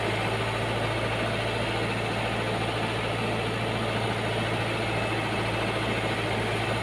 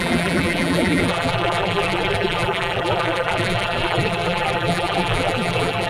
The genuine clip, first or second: first